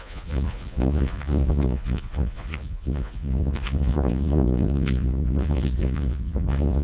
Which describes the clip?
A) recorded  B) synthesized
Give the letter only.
B